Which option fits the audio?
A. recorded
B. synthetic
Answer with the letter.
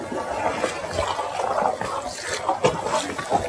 A